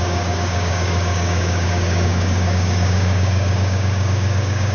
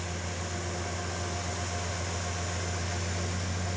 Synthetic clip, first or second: first